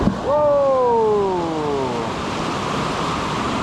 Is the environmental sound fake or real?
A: real